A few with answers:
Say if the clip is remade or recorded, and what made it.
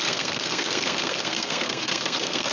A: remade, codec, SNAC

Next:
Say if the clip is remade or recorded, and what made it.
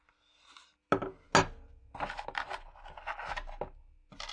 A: recorded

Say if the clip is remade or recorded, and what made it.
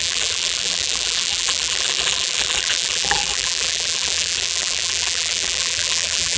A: remade, vocoder, BigVGAN v2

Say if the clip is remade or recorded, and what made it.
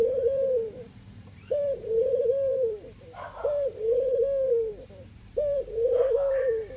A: remade, vocoder, BigVGAN v2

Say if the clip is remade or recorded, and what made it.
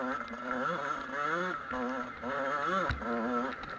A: recorded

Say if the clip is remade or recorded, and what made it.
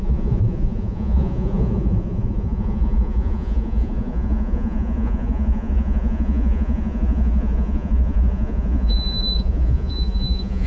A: remade, vocoder, Vocos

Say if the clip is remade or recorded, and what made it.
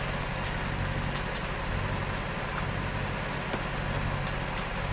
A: recorded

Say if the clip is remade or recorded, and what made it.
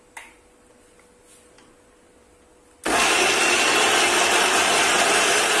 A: recorded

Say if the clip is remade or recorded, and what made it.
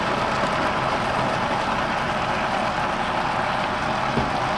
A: recorded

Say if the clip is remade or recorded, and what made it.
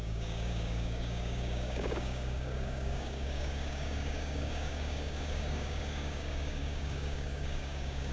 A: remade, codec, DAC